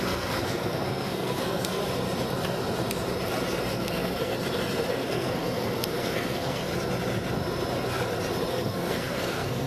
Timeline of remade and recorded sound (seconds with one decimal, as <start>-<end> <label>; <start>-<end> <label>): 0.0-1.8 remade; 1.8-3.7 recorded; 3.7-4.3 remade; 4.3-4.9 recorded; 4.9-6.7 remade; 6.7-8.5 recorded; 8.5-9.7 remade